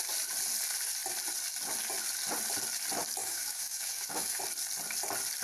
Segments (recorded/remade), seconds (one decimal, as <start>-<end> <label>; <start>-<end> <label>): 0.0-3.2 recorded; 3.2-4.4 remade; 4.4-5.4 recorded